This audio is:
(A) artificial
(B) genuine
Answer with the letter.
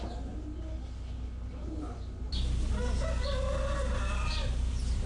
B